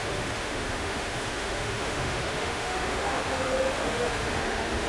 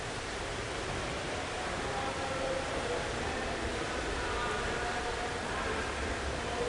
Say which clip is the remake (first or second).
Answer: first